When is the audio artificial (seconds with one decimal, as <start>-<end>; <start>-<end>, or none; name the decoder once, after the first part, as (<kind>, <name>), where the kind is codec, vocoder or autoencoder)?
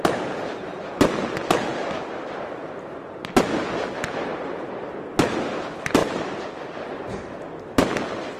1.7-3.4 (vocoder, BigVGAN v2); 6.0-6.9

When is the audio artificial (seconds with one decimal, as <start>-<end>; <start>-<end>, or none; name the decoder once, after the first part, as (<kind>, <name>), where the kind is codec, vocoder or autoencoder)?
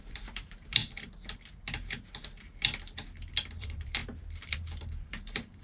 0.0-0.8 (vocoder, BigVGAN v2); 3.6-4.0; 4.5-5.6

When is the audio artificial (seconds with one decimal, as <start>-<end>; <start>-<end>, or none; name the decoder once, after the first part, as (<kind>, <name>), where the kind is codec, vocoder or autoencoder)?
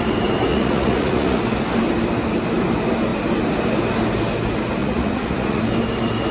0.5-1.4 (vocoder, Vocos); 4.8-5.6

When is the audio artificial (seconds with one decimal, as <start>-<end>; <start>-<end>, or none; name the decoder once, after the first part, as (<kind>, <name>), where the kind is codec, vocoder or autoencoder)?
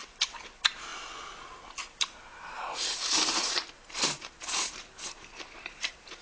2.3-6.2 (vocoder, BigVGAN v2)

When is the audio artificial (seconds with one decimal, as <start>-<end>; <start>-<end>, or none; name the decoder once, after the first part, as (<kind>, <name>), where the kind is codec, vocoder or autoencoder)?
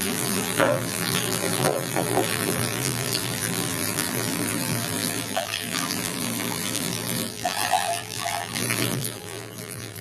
0.0-10.0 (vocoder, BigVGAN v2)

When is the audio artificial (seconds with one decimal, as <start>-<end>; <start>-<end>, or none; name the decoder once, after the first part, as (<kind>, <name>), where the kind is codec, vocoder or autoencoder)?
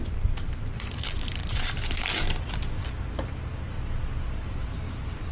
none